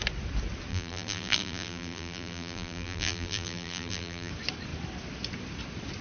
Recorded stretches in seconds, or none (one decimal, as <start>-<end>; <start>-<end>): 0.0-0.7; 4.3-6.0